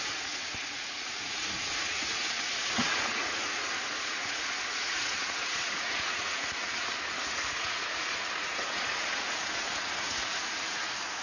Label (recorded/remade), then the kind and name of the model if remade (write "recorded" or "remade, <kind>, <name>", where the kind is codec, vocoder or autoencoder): remade, vocoder, Vocos